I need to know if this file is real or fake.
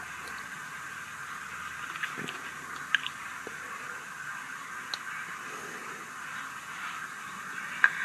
real